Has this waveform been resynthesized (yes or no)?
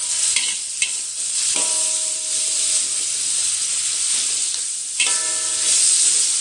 no